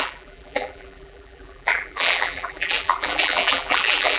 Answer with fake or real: fake